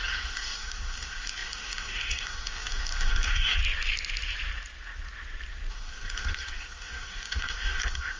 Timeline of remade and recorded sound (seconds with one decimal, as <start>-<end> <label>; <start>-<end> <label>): 0.0-3.6 remade; 3.6-5.7 recorded; 5.7-8.2 remade